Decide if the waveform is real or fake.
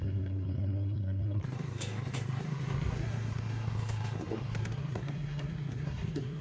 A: fake